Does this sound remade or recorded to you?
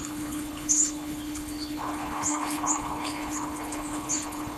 remade